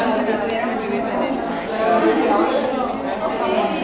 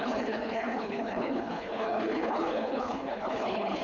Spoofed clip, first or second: second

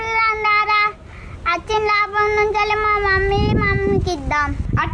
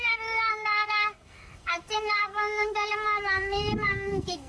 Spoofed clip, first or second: second